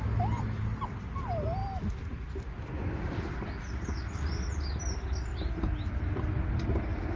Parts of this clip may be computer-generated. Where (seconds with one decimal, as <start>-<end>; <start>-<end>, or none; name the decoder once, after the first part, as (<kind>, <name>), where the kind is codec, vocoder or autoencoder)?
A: none